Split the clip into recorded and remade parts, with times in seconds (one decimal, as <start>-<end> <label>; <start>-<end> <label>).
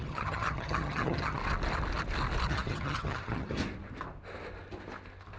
0.0-1.4 remade; 1.4-2.5 recorded; 2.5-3.6 remade; 3.6-5.4 recorded